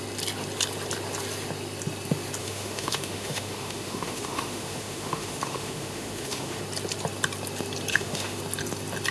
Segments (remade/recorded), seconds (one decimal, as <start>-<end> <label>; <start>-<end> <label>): 0.0-2.4 recorded; 2.4-6.6 remade; 6.6-7.9 recorded; 7.9-8.4 remade; 8.4-9.1 recorded